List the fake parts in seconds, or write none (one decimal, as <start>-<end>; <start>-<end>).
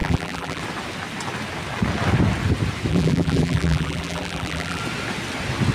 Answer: 0.0-0.6; 2.9-4.8